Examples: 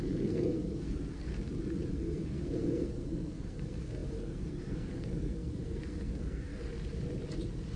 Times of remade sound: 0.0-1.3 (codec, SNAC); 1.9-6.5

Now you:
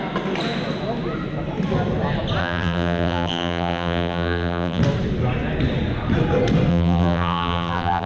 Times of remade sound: 2.4-4.8 (vocoder, BigVGAN v2); 6.7-8.1

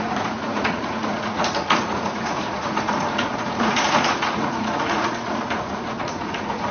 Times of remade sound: 0.0-6.7 (vocoder, Vocos)

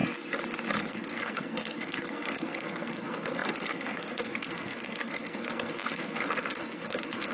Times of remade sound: 0.8-7.3 (codec, SNAC)